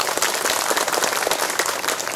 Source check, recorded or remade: recorded